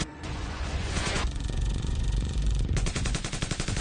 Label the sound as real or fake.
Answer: fake